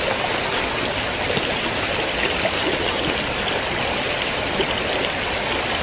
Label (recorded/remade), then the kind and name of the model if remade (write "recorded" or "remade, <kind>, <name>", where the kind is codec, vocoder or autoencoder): recorded